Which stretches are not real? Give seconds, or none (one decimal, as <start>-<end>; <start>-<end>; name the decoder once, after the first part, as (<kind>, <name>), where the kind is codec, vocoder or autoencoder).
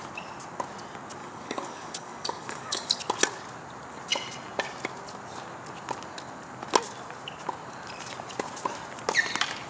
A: 1.2-3.0 (codec, DAC)